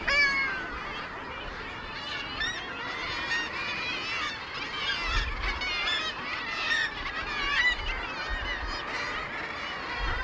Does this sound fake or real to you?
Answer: real